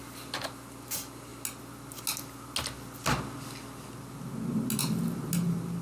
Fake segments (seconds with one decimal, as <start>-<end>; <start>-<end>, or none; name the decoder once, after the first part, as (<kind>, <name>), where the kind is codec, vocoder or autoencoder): none